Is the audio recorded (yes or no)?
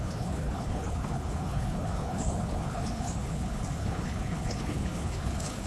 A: no